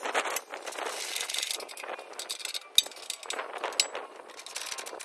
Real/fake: real